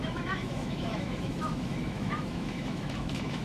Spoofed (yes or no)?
yes